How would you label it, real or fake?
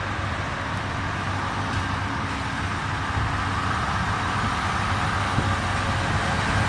real